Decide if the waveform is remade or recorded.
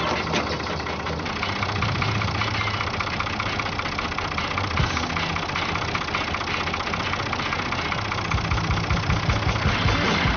recorded